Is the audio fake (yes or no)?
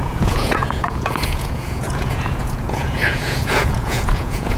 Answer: yes